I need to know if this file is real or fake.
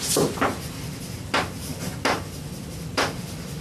fake